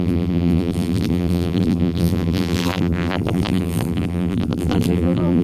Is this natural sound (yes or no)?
no